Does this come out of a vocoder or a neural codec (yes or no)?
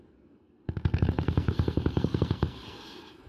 yes